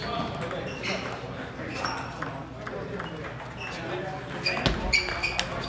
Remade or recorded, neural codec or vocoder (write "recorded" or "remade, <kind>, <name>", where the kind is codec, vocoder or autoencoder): recorded